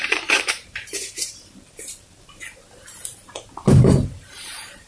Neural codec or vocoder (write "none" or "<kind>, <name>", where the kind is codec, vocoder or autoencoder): vocoder, BigVGAN v2